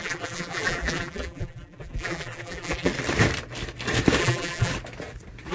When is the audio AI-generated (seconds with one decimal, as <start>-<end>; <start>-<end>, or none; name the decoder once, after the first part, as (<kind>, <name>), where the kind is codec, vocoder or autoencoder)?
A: 0.0-2.9 (vocoder, BigVGAN v2); 4.2-4.7

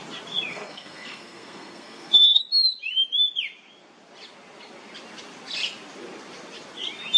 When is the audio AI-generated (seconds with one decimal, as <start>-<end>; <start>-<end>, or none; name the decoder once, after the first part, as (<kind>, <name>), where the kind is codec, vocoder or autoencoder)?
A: 0.5-2.4 (codec, SNAC)